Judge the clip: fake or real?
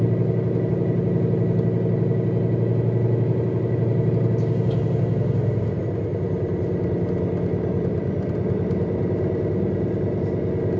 real